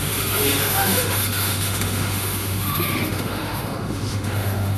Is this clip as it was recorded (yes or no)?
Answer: no